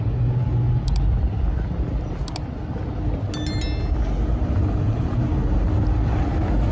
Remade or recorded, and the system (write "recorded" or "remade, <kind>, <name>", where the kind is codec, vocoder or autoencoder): recorded